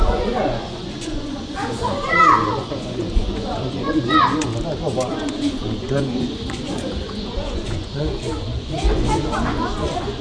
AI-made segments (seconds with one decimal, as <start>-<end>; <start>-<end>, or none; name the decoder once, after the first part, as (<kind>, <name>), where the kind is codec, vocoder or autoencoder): 0.0-4.5 (vocoder, Vocos); 5.1-10.2